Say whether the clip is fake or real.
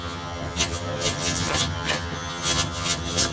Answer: fake